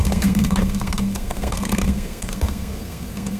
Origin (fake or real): fake